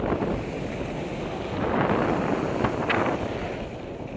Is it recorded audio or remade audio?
recorded